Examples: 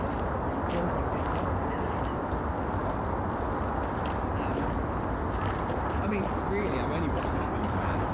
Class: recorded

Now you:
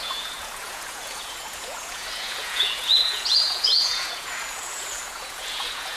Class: remade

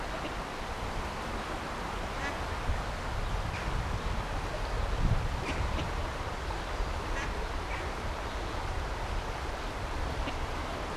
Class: recorded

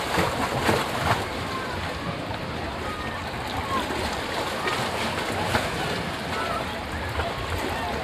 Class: recorded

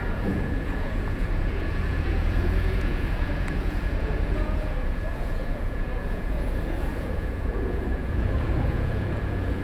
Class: remade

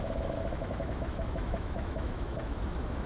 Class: remade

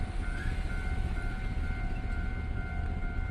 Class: recorded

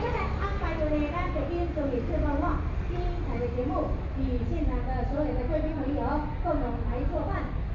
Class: recorded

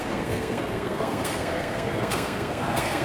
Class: remade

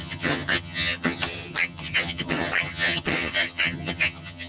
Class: remade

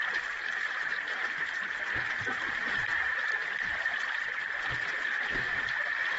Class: remade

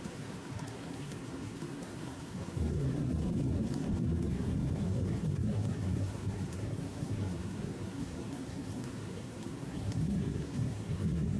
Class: remade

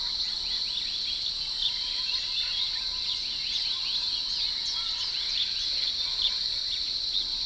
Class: recorded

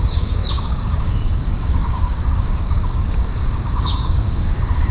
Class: remade